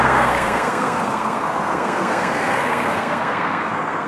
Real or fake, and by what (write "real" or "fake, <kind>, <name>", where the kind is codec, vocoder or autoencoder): fake, codec, SNAC